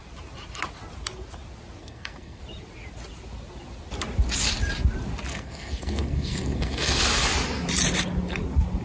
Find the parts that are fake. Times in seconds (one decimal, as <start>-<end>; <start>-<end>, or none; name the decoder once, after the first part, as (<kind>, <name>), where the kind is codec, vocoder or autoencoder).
1.8-2.4 (codec, SNAC); 5.3-7.0